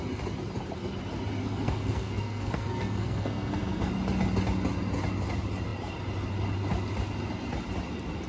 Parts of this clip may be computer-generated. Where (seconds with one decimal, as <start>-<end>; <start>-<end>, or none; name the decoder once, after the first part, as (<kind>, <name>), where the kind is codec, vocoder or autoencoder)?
1.4-3.9 (codec, SNAC)